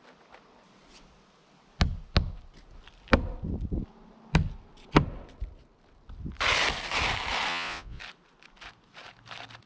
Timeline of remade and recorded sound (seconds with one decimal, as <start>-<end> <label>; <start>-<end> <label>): 0.0-7.5 recorded; 7.5-8.0 remade; 8.0-9.7 recorded